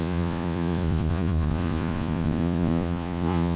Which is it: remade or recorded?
remade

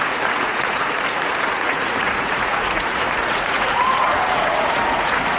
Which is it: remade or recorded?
remade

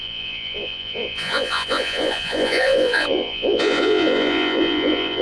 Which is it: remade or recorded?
remade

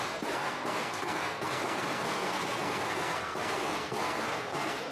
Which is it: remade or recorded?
remade